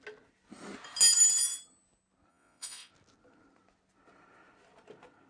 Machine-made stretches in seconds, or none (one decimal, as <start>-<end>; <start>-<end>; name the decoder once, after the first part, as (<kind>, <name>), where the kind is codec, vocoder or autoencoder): 2.3-2.9 (vocoder, Vocos)